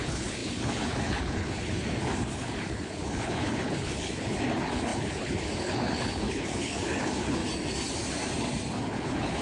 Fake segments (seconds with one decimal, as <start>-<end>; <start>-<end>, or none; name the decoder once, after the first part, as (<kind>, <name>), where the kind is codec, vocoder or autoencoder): 0.0-7.4 (codec, HILCodec); 8.7-9.4